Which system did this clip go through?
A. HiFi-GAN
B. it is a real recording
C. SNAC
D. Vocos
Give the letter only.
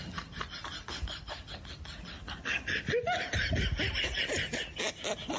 B